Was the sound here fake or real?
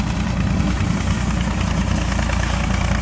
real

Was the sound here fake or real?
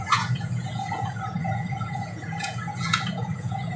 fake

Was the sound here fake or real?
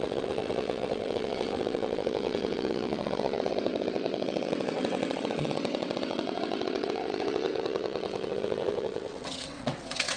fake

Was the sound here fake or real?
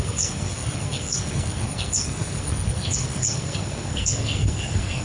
fake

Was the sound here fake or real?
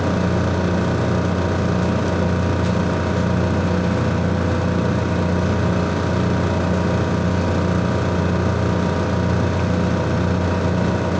real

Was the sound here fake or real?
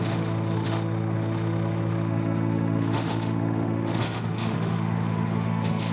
fake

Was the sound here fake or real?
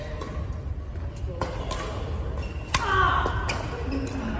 real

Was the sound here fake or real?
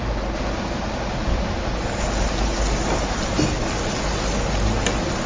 real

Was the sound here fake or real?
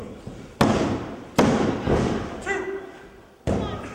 real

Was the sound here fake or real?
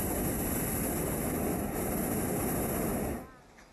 real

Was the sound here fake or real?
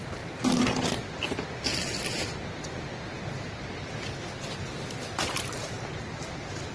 real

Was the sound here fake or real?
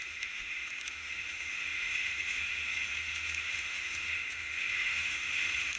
fake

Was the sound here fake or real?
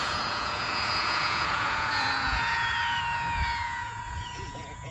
fake